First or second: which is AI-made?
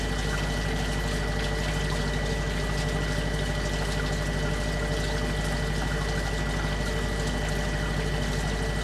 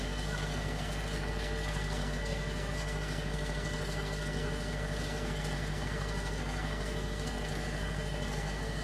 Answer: second